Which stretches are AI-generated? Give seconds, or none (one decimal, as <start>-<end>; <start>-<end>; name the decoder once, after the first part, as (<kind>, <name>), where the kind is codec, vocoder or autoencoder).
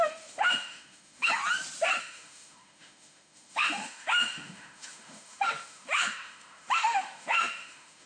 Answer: 0.0-1.4 (autoencoder, DAC-VAE); 2.0-8.1